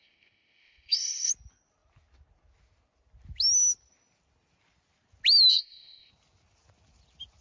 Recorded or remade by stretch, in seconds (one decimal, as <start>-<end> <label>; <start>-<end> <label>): 0.0-1.3 remade; 1.3-5.5 recorded; 5.5-6.1 remade; 6.1-7.4 recorded